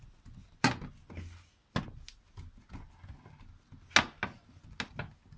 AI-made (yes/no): no